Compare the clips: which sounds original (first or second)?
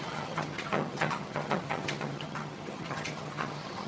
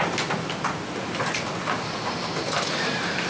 second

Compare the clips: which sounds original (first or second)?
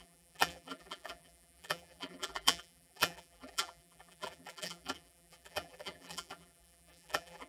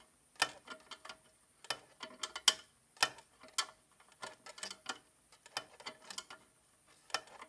second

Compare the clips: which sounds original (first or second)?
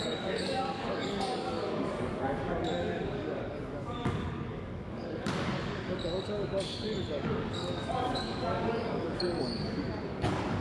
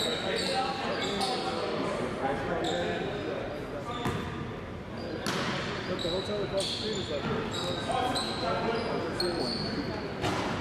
second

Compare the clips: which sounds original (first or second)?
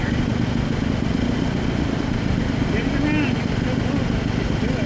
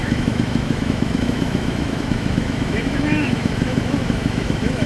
first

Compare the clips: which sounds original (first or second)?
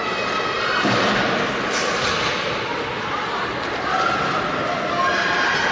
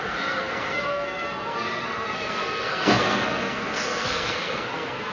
first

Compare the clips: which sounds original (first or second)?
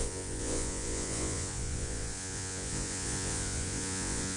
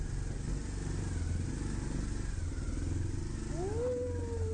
second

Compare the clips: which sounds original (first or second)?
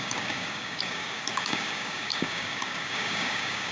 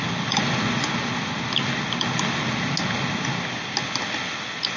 second